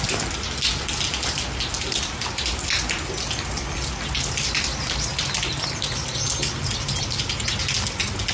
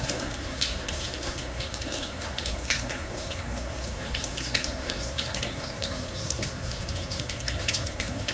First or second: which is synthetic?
second